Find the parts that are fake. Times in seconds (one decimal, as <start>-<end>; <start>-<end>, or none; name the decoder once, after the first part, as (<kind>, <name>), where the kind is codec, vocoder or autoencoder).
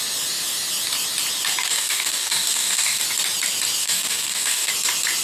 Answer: 1.7-3.0 (codec, DAC); 3.8-4.7